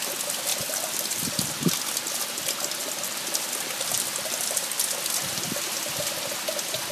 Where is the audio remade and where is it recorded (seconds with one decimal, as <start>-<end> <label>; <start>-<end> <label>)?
0.0-0.5 recorded; 0.5-1.7 remade; 1.7-2.8 recorded; 2.8-4.8 remade; 4.8-6.9 recorded